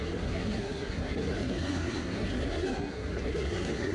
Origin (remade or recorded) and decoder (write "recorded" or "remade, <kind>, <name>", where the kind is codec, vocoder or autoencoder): remade, codec, SNAC